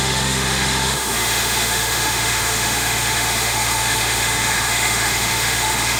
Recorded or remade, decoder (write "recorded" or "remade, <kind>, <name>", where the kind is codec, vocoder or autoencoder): remade, autoencoder, DAC-VAE